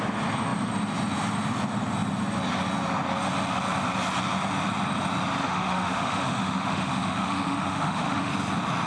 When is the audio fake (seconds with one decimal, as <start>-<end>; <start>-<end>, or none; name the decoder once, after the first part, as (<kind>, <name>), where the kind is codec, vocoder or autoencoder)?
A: 5.4-8.3 (autoencoder, DAC-VAE)